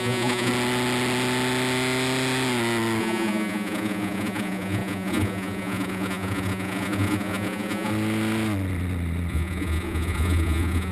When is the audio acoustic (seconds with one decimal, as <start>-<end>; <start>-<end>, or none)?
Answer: 0.5-3.0; 7.9-9.3